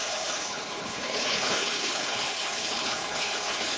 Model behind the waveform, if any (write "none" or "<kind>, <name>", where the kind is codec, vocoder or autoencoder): codec, HILCodec